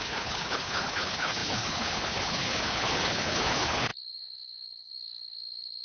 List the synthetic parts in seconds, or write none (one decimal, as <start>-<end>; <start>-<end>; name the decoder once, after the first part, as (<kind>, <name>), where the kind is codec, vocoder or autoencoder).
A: 0.0-5.8 (codec, HILCodec)